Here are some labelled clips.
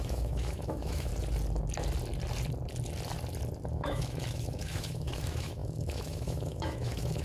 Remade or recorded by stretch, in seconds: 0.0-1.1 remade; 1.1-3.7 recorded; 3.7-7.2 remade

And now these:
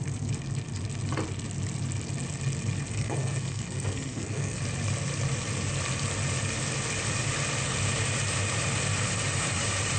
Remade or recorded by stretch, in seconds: 0.0-2.9 recorded; 2.9-4.6 remade; 4.6-10.0 recorded

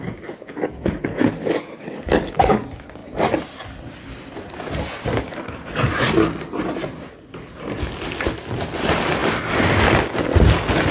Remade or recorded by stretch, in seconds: 0.0-2.6 remade; 2.6-5.1 recorded; 5.1-6.0 remade; 6.0-10.9 recorded